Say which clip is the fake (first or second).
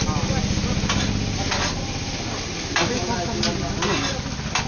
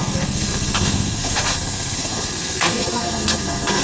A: second